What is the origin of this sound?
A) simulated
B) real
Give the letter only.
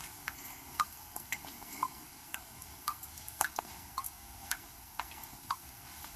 A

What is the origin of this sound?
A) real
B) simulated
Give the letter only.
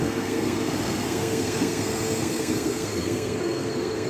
B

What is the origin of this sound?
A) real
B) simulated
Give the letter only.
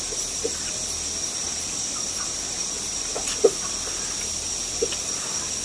A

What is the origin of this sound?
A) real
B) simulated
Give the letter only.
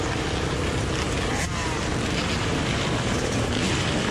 A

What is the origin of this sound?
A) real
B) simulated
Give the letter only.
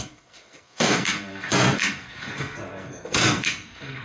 B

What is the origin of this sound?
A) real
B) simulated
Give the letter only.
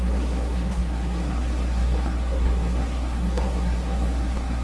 B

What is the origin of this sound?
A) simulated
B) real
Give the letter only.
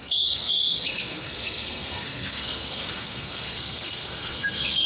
A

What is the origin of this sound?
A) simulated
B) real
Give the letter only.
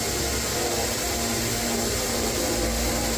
B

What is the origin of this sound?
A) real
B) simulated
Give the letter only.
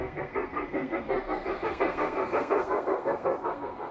B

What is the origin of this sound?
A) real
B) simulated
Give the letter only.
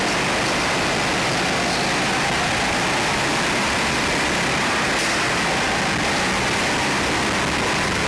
A